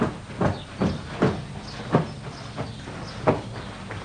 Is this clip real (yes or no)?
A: yes